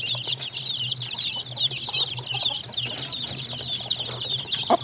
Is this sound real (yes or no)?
yes